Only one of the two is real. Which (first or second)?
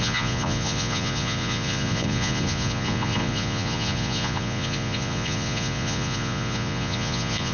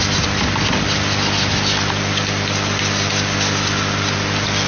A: second